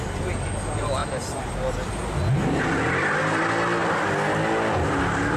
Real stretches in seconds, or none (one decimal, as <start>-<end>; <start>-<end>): 0.0-5.4